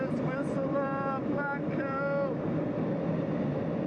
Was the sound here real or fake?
real